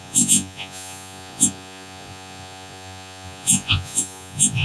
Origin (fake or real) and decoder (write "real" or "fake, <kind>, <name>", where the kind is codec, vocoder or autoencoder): fake, vocoder, Vocos